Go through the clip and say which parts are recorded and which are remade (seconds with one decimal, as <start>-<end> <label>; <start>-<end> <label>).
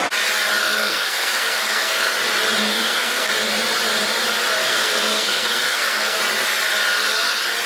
0.0-0.6 recorded; 0.6-2.1 remade; 2.1-2.7 recorded; 2.7-3.3 remade; 3.3-4.6 recorded; 4.6-6.2 remade; 6.2-7.7 recorded